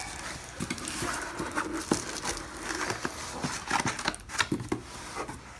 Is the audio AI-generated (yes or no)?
no